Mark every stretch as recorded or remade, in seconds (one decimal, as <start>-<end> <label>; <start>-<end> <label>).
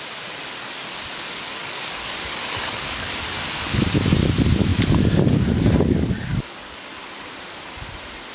0.0-1.6 recorded; 1.6-3.1 remade; 3.1-6.3 recorded; 6.3-6.9 remade; 6.9-8.3 recorded